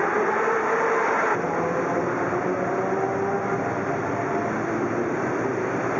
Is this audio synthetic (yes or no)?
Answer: no